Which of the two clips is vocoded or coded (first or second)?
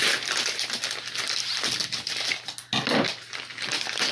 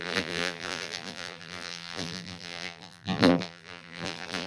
second